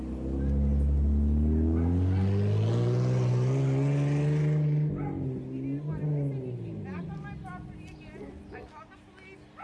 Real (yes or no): yes